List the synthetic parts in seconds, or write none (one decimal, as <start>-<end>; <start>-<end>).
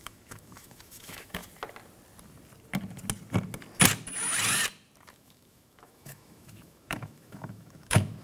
0.0-1.4; 5.1-8.2